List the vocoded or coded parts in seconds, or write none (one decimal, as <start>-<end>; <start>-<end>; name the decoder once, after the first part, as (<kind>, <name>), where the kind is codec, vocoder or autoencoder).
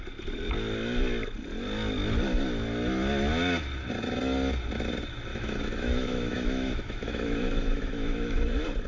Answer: 5.3-8.5 (autoencoder, DAC-VAE)